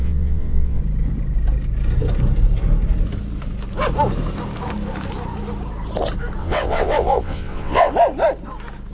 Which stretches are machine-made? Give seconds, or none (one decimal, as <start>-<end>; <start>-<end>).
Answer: 0.0-0.8; 6.4-7.9